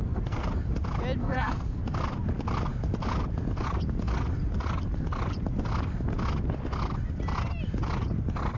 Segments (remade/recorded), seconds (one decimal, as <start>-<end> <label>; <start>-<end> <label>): 0.0-0.5 remade; 0.5-1.2 recorded; 1.2-1.8 remade; 1.8-8.6 recorded